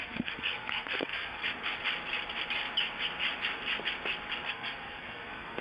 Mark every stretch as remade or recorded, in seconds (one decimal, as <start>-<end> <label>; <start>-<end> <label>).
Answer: 0.0-1.4 remade; 1.4-4.5 recorded; 4.5-5.6 remade